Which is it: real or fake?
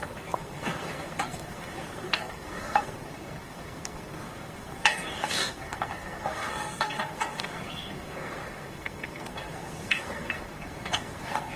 fake